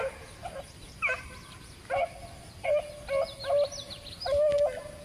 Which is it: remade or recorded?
recorded